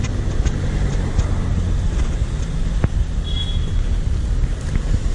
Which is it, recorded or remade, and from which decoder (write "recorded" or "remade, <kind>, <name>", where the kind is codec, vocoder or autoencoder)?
recorded